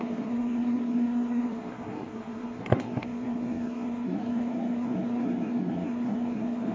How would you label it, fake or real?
fake